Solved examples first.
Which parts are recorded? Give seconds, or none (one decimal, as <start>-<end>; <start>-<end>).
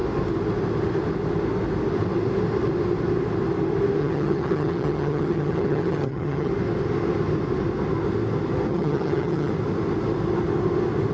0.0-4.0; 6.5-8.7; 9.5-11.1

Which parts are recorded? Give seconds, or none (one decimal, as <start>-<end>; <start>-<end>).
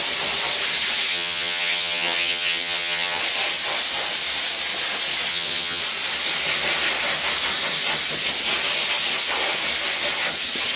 0.0-1.1; 3.2-5.3; 5.8-10.8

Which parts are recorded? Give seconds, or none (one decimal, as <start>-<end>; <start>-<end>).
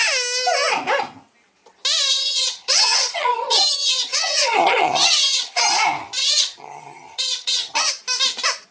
0.0-2.1; 5.6-6.2; 7.9-8.7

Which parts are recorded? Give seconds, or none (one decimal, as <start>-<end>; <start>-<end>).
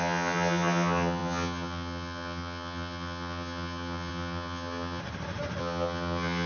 5.0-5.6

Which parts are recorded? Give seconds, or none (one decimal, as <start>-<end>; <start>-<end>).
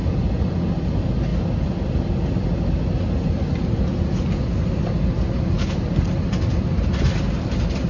0.0-7.9